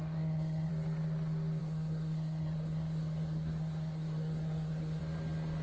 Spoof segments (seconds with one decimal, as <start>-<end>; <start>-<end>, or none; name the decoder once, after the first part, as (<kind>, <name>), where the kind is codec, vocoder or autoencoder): 0.0-0.7 (codec, SNAC); 1.6-5.0